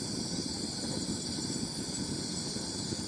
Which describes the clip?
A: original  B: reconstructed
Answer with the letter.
A